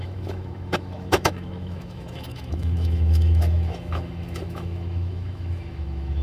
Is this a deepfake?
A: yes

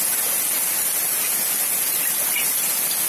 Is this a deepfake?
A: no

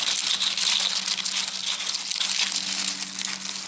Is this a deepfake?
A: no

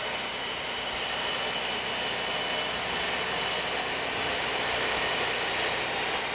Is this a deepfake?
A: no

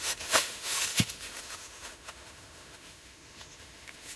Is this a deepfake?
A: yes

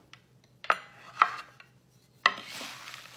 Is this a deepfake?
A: no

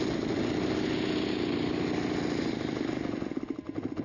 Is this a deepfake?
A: no